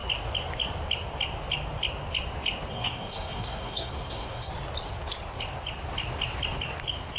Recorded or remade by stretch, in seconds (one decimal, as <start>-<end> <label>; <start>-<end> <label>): 0.0-2.7 recorded; 2.7-4.5 remade; 4.5-7.2 recorded